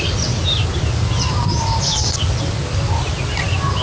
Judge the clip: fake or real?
real